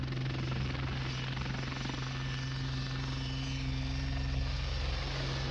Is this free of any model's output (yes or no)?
yes